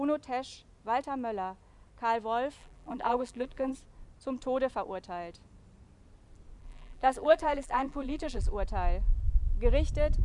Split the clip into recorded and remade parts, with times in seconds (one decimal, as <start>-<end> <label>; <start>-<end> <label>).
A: 0.0-2.6 recorded; 2.6-3.7 remade; 3.7-6.6 recorded; 6.6-8.5 remade; 8.5-10.2 recorded